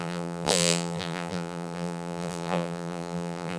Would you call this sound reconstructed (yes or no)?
yes